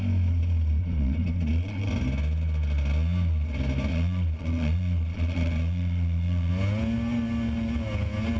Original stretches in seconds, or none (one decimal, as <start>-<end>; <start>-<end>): 0.0-0.8; 1.9-3.9; 6.5-8.4